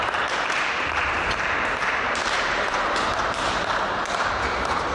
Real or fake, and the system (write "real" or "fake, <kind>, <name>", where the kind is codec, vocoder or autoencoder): fake, vocoder, BigVGAN v2